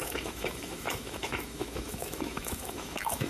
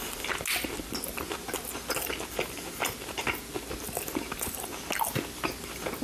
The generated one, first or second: first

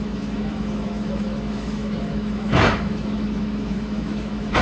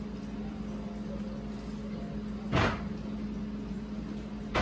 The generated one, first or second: first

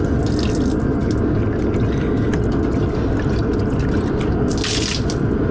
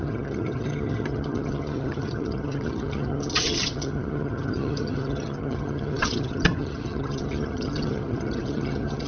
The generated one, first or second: second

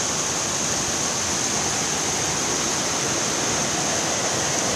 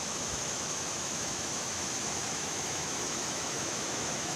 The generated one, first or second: second